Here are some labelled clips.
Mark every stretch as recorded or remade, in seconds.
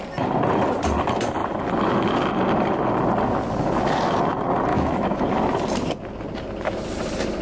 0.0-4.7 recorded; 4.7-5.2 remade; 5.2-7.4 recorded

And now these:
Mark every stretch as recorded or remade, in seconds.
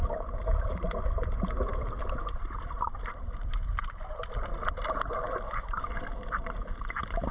0.0-7.3 recorded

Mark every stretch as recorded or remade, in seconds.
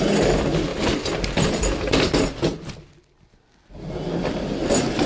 0.0-5.1 recorded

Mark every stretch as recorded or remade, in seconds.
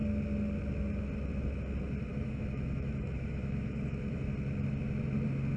0.0-2.1 recorded; 2.1-4.2 remade; 4.2-5.6 recorded